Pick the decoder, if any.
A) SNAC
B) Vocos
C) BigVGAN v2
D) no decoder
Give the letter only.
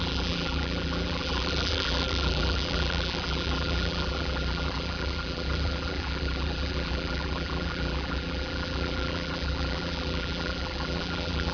C